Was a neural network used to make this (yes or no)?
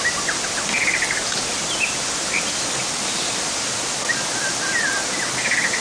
no